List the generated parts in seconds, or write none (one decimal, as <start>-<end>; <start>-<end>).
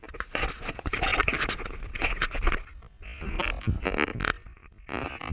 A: none